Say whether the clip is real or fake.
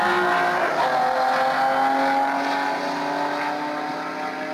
real